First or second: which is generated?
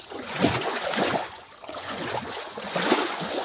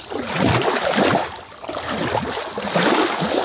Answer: first